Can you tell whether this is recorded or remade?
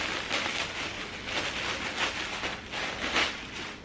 recorded